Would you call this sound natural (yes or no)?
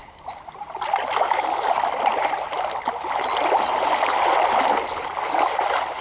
yes